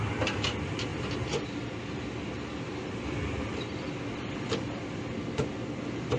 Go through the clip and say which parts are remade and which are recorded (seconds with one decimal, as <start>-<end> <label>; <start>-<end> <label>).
0.0-6.2 recorded